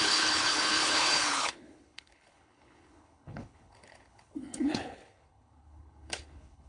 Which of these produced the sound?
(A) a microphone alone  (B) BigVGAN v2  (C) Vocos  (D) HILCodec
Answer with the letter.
D